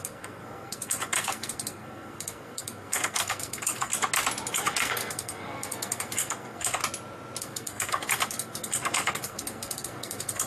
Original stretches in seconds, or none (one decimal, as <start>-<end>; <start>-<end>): 3.9-4.5; 6.8-7.4